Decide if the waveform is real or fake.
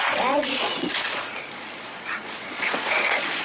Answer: fake